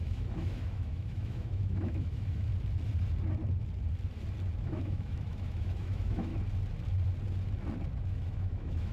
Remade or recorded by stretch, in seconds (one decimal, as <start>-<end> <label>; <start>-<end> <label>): 0.0-2.5 remade; 2.5-4.6 recorded; 4.6-6.3 remade; 6.3-8.0 recorded; 8.0-8.9 remade